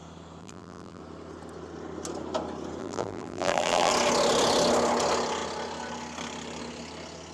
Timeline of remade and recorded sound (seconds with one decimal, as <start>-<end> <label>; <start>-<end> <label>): 0.0-0.4 recorded; 0.4-1.0 remade; 1.0-2.8 recorded; 2.8-3.9 remade; 3.9-7.3 recorded